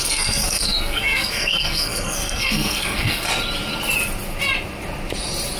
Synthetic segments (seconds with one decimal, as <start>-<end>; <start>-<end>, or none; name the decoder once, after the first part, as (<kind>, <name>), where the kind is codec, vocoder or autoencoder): 0.0-3.3 (codec, SNAC)